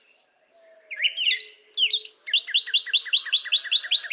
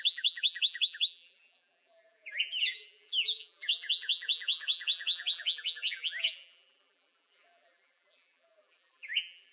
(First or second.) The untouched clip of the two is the first